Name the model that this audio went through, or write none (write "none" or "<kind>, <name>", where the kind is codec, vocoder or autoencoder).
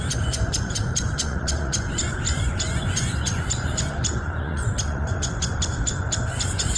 vocoder, Vocos